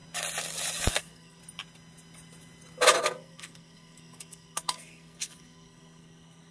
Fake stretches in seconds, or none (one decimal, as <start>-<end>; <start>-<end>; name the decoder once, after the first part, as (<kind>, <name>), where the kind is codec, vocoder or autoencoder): 0.9-1.4 (codec, SNAC); 3.0-6.5